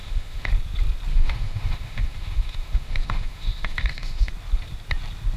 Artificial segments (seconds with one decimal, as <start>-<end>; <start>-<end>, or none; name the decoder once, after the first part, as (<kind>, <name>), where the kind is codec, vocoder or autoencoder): 0.0-0.5 (autoencoder, DAC-VAE); 1.1-4.3